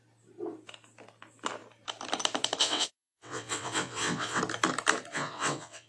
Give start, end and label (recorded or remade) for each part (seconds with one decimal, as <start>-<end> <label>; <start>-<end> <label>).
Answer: 0.0-2.6 recorded; 2.6-4.4 remade; 4.4-5.1 recorded; 5.1-5.9 remade